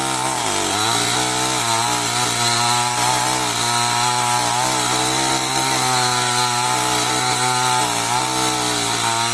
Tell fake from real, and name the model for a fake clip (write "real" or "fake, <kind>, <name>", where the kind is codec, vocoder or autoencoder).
real